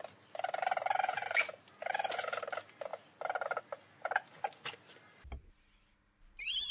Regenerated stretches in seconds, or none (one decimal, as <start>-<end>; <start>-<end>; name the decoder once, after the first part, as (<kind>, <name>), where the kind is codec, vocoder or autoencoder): none